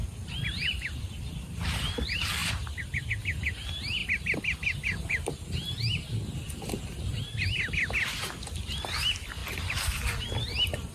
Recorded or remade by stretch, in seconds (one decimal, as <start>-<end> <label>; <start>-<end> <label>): 0.0-10.9 recorded